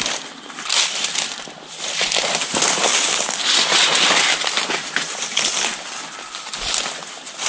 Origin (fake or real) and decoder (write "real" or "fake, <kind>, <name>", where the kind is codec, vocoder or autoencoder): real